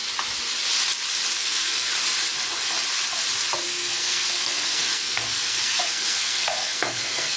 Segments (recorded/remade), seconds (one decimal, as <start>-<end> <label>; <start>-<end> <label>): 0.0-1.4 recorded; 1.4-1.9 remade; 1.9-3.6 recorded; 3.6-7.4 remade